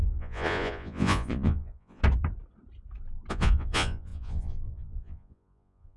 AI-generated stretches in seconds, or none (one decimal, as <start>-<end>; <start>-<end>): 0.0-2.0; 3.3-6.0